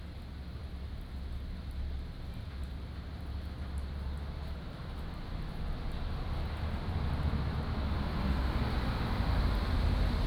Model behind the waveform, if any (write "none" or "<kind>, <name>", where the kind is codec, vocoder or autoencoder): none